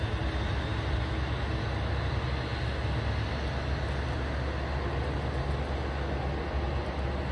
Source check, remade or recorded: recorded